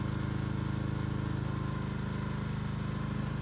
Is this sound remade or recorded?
recorded